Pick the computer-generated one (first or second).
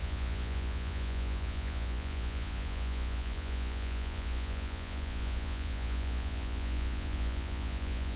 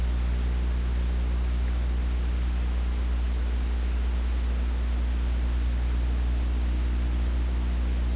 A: first